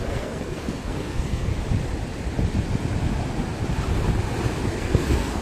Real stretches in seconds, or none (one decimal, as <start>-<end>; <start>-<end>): 1.5-4.7